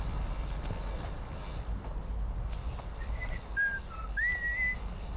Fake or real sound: real